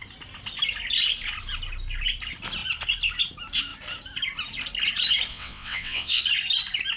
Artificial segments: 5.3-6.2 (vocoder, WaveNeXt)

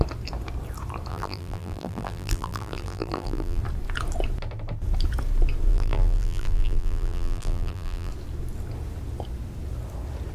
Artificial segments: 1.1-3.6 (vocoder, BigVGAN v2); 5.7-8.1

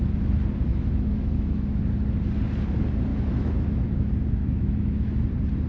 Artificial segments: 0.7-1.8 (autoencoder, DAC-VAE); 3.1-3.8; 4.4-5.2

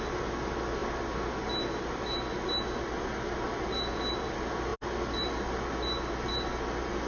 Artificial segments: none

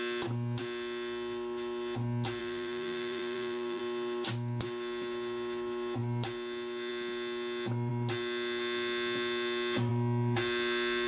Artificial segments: 2.4-3.8 (vocoder, BigVGAN v2)

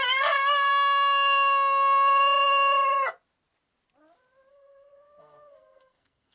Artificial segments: 0.0-0.7 (codec, SNAC); 4.5-6.3